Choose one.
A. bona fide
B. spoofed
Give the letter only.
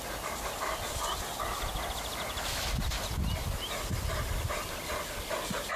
A